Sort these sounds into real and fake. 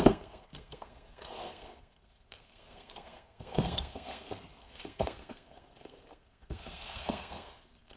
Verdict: fake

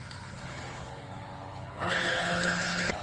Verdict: fake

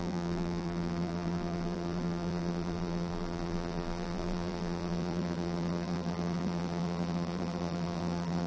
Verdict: fake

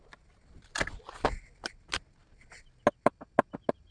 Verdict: real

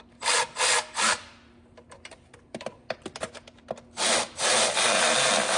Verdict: real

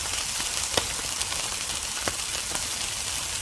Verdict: real